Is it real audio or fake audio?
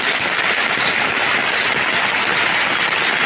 real